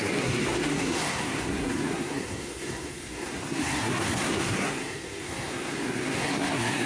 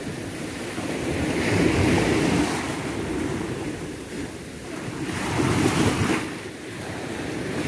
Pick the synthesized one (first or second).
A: first